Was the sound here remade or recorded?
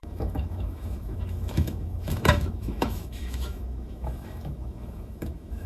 remade